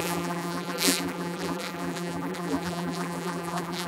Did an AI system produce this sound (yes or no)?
yes